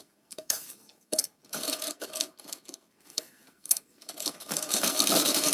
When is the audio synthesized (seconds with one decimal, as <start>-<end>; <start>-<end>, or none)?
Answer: 0.0-5.5